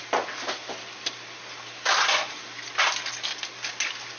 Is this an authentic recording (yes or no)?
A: yes